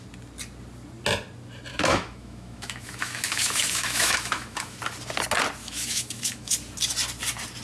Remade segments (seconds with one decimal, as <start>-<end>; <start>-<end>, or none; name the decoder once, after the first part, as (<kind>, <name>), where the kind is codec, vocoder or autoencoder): 1.7-4.8 (autoencoder, DAC-VAE); 5.6-6.5